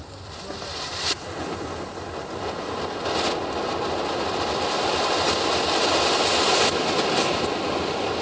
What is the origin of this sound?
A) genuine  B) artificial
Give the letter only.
A